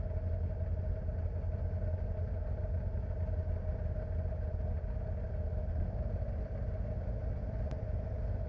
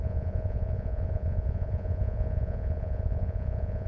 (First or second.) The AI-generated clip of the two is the second